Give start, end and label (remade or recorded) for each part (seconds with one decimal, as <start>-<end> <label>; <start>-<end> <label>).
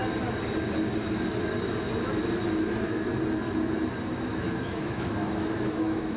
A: 0.0-4.3 recorded; 4.3-6.2 remade